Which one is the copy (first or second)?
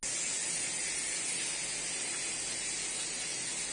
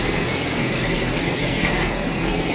second